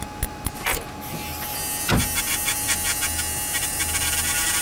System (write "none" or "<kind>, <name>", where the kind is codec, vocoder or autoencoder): none